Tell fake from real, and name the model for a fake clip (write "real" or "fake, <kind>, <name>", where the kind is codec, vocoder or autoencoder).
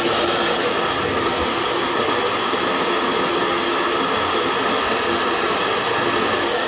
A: real